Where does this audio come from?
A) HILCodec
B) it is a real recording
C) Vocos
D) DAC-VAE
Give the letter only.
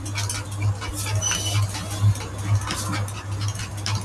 B